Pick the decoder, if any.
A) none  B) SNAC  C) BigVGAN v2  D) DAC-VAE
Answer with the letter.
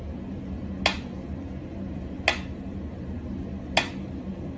A